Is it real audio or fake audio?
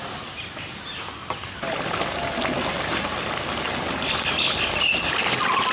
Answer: real